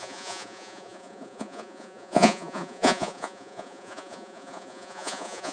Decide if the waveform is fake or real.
fake